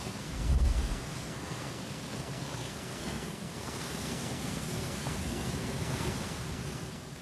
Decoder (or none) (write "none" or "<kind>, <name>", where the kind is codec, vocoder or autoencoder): codec, SNAC